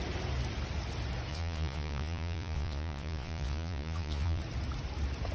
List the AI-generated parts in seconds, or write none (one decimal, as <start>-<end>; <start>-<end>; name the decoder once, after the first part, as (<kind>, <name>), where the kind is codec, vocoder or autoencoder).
1.3-4.4 (vocoder, Vocos)

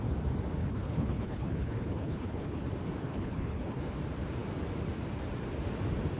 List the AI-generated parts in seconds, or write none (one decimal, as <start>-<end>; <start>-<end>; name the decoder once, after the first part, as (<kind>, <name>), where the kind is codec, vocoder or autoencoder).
0.6-2.6 (codec, HILCodec); 3.0-3.9

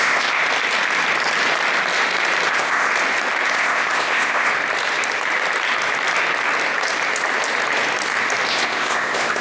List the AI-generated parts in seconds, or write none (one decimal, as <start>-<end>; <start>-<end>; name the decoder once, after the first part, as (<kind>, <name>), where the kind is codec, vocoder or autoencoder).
0.0-0.4 (codec, ZipCodec); 2.5-2.9; 3.5-4.5; 8.5-9.4